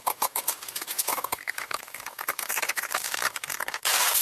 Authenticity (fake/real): fake